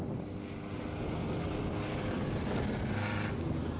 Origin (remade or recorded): recorded